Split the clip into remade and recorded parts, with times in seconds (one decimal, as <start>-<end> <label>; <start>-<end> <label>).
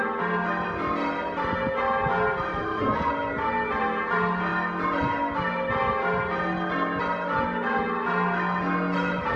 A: 0.0-2.5 recorded; 2.5-3.1 remade; 3.1-9.4 recorded